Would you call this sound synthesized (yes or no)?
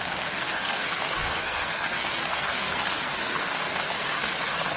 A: yes